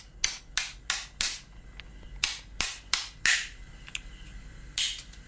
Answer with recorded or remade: recorded